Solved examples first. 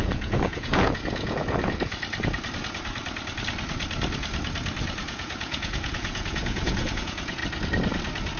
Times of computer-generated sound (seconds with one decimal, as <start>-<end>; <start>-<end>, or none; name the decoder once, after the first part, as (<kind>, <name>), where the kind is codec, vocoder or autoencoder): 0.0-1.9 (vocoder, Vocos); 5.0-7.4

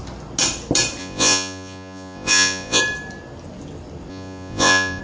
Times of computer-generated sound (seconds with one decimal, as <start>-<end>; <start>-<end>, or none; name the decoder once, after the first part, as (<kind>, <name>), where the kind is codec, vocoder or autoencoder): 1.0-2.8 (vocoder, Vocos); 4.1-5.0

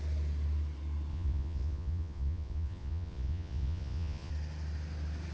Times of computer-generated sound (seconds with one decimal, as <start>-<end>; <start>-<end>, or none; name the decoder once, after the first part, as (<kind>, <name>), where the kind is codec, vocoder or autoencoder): 1.1-4.3 (vocoder, Vocos)